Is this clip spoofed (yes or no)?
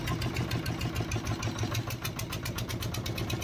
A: no